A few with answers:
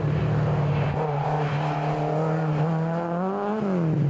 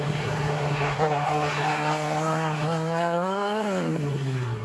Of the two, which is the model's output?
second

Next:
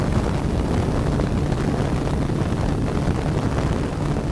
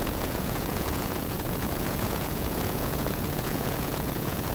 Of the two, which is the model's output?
second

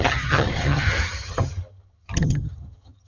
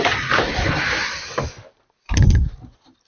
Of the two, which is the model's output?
first